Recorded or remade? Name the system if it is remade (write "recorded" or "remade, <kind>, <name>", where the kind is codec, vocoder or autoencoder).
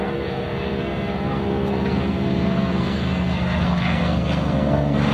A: remade, codec, SNAC